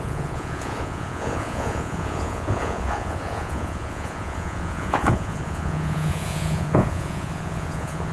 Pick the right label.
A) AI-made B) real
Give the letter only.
A